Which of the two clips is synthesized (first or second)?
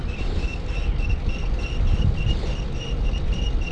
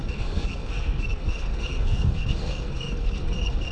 second